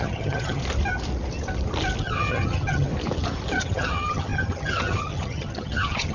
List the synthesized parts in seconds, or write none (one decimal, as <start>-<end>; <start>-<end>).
0.0-0.6; 2.0-2.9; 3.6-6.1